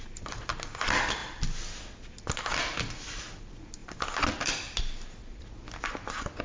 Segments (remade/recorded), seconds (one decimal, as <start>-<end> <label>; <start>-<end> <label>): 0.0-6.4 recorded